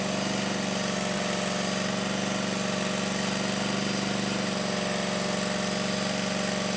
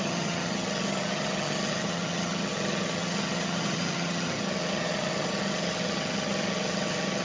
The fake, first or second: second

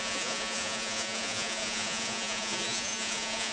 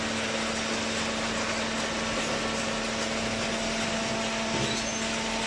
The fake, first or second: first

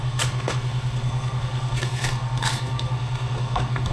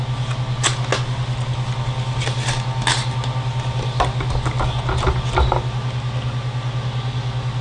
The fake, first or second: first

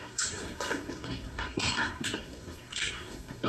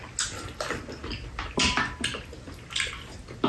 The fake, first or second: first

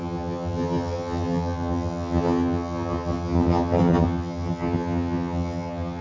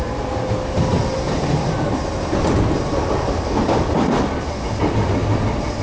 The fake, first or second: first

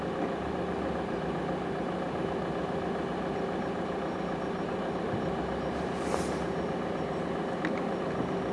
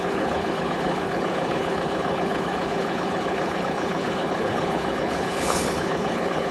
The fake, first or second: second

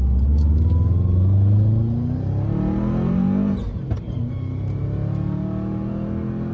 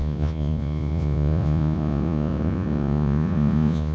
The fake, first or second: second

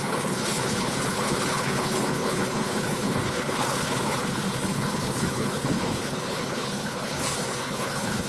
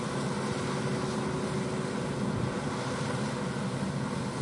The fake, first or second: first